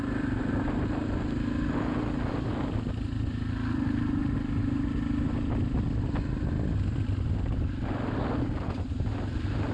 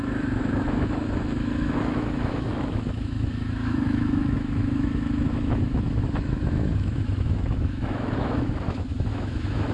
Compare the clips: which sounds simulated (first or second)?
second